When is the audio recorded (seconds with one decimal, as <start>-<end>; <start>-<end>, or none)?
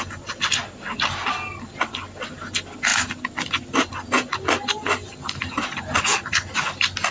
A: 0.0-7.1